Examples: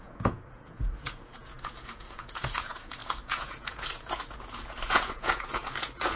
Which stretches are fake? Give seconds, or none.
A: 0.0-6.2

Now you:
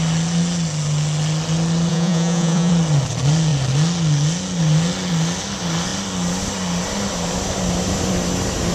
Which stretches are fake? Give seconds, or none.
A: 1.9-2.7

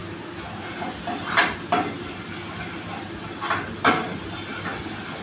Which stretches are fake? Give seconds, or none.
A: none